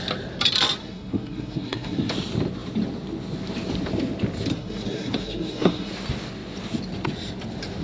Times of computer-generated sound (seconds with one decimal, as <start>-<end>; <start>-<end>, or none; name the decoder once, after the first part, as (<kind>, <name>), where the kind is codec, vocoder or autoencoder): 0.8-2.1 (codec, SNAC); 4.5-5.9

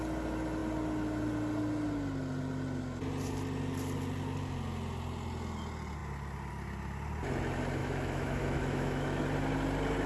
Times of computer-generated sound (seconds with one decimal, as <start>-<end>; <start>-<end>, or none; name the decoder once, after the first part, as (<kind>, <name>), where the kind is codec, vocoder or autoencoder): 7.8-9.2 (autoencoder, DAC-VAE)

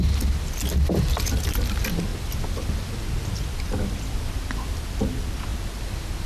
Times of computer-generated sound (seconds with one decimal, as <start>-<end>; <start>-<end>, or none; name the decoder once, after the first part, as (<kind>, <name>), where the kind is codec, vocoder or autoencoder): none

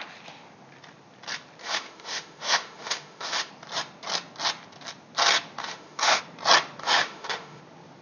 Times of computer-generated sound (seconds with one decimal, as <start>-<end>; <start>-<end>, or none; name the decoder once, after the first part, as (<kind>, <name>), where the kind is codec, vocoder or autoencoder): 1.6-3.5 (autoencoder, DAC-VAE); 5.6-6.2; 6.8-7.6